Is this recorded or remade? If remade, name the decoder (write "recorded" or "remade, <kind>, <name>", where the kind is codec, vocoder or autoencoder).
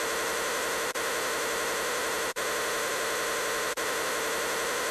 remade, vocoder, BigVGAN v2